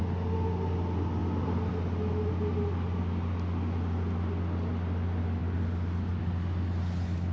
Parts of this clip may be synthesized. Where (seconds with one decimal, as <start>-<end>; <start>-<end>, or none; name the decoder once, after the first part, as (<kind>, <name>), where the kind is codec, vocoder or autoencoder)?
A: none